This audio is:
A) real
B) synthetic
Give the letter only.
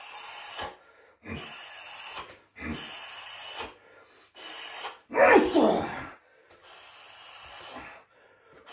A